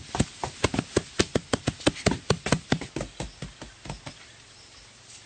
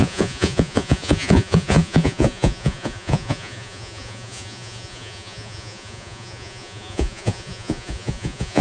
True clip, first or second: first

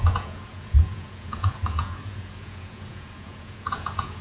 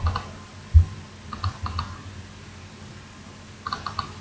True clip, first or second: second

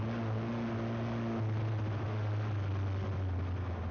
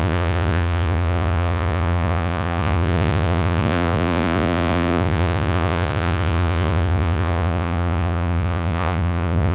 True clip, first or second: first